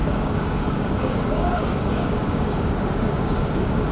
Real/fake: fake